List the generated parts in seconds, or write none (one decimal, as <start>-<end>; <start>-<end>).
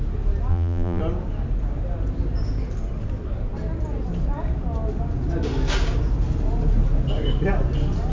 0.5-1.0